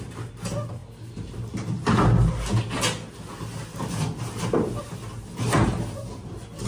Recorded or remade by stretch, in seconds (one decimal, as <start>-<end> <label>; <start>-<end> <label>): 0.0-6.7 recorded